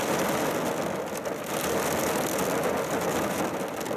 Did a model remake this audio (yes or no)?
no